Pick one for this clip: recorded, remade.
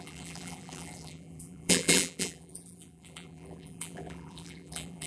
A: remade